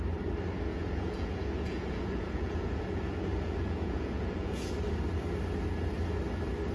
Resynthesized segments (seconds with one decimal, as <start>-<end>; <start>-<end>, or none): 0.7-4.7

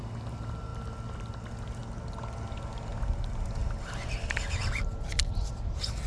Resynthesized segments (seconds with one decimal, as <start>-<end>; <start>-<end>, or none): none